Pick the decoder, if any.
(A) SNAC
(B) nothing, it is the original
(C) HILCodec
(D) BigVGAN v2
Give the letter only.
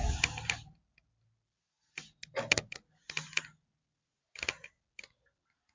B